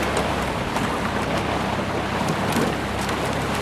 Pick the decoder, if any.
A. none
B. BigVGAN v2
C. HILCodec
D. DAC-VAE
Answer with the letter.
A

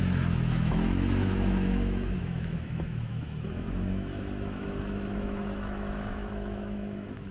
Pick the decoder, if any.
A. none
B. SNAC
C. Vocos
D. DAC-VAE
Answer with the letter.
D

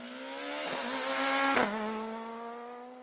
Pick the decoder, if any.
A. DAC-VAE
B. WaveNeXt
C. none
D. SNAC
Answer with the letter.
C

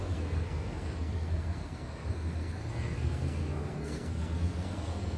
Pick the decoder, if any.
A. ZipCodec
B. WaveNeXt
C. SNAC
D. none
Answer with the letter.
C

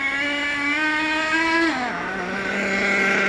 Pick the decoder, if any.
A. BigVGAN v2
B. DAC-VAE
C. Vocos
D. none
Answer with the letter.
D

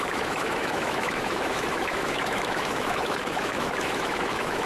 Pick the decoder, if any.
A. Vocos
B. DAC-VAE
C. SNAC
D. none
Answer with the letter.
B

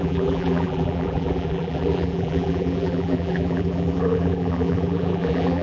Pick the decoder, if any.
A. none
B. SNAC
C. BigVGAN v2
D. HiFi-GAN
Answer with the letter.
C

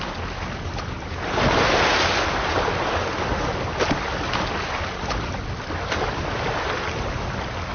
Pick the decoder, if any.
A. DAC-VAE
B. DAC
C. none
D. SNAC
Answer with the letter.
C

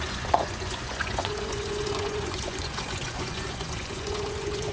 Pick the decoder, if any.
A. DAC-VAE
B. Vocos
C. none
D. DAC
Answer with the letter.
B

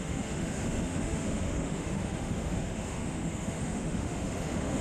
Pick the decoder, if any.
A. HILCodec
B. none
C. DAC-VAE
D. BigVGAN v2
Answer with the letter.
C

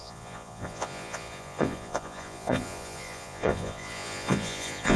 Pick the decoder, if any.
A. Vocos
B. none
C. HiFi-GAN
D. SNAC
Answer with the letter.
A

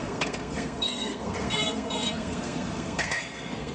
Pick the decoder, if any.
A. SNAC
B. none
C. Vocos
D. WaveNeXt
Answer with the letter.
A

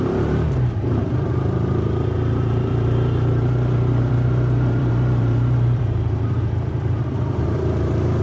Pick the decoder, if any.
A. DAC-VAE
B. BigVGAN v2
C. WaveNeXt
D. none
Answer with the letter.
B